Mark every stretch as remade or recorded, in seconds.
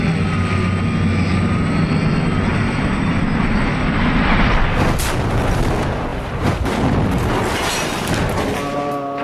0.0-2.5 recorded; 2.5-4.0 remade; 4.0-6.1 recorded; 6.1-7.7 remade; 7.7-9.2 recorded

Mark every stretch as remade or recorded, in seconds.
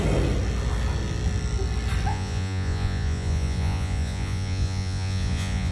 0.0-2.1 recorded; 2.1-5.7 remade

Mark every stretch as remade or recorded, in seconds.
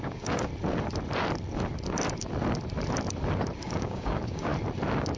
0.0-0.5 remade; 0.5-3.6 recorded; 3.6-4.5 remade; 4.5-5.2 recorded